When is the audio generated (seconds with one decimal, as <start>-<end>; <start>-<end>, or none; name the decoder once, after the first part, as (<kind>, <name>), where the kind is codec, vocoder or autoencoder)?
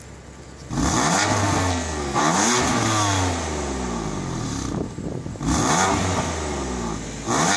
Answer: 1.4-2.2 (codec, SNAC)